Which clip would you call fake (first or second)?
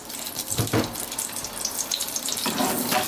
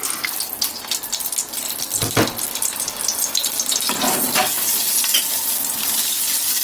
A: first